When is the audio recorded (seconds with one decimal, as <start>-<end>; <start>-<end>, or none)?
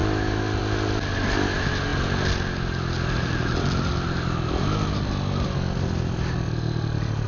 0.0-7.3